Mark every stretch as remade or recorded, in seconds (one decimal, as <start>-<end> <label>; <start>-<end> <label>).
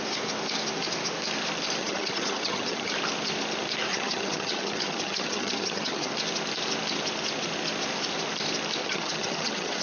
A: 0.0-1.8 recorded; 1.8-2.9 remade; 2.9-3.9 recorded; 3.9-6.1 remade; 6.1-8.8 recorded; 8.8-9.8 remade